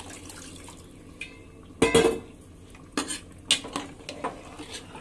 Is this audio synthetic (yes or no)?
no